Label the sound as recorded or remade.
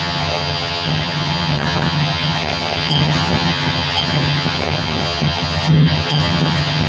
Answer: remade